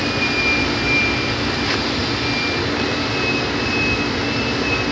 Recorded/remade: recorded